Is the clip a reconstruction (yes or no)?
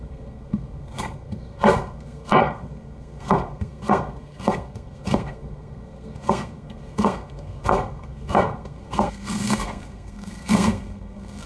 yes